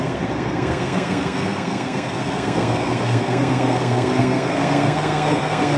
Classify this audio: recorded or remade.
remade